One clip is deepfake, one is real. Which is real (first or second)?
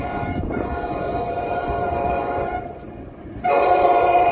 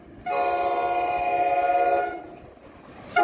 second